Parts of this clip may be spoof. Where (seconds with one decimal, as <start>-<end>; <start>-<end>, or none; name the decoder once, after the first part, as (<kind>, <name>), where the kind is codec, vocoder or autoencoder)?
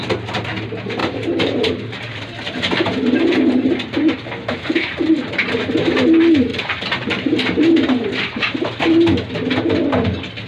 1.0-5.1 (vocoder, BigVGAN v2); 6.5-8.8